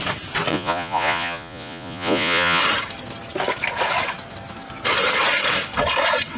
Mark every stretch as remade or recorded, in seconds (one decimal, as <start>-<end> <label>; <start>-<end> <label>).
0.0-0.5 recorded; 0.5-2.6 remade; 2.6-6.4 recorded